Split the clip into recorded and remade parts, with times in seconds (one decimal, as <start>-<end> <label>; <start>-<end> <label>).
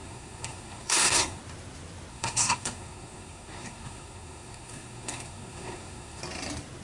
0.0-1.4 remade; 1.4-2.1 recorded; 2.1-6.2 remade; 6.2-6.8 recorded